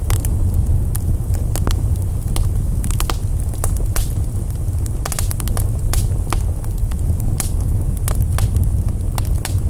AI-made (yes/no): no